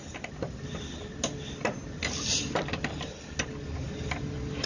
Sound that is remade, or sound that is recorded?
recorded